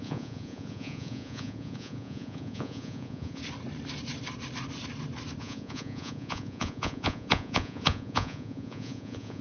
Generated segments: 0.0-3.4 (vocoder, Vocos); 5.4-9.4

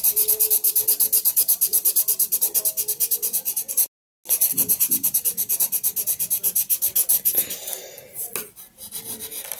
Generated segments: none

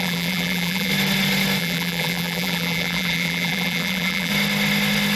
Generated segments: 0.0-0.9 (vocoder, BigVGAN v2); 1.6-4.3

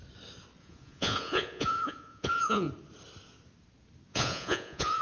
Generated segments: 0.6-2.7 (vocoder, Vocos); 4.1-5.0

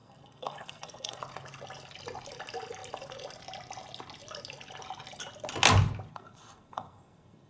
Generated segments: 0.0-1.2 (codec, SNAC); 6.1-7.5

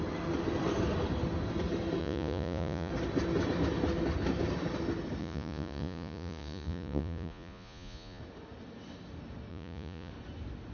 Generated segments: 2.0-2.9 (vocoder, Vocos); 5.2-8.2; 9.5-10.1